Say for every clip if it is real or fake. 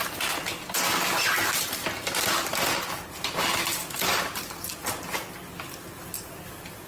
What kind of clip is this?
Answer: real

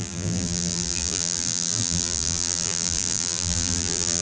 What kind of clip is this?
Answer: fake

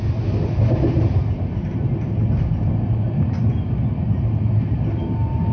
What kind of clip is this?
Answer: real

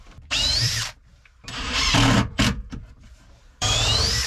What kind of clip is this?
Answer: fake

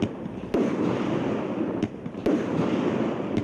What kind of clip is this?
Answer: real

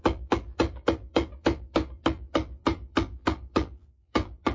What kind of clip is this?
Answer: fake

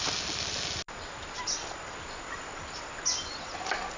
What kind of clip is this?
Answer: real